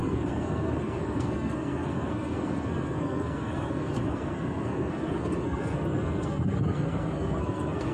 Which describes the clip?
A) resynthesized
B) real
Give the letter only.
A